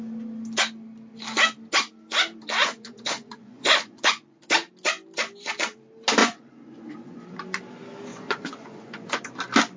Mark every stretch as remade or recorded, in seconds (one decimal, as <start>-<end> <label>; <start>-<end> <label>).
0.0-2.6 recorded; 2.6-4.4 remade; 4.4-6.2 recorded; 6.2-7.6 remade; 7.6-8.1 recorded; 8.1-9.3 remade; 9.3-9.8 recorded